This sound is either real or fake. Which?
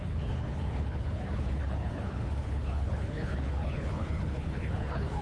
fake